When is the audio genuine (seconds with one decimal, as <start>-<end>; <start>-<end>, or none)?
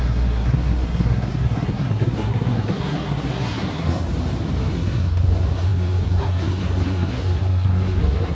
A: 4.1-4.7